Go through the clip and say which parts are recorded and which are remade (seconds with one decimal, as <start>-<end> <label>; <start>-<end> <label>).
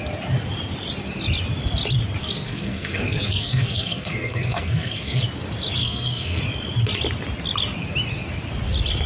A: 0.0-2.2 recorded; 2.2-5.2 remade; 5.2-5.8 recorded; 5.8-6.4 remade; 6.4-9.1 recorded